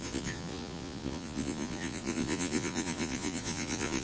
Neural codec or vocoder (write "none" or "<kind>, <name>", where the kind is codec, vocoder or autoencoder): vocoder, Vocos